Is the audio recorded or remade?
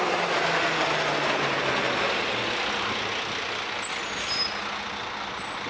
recorded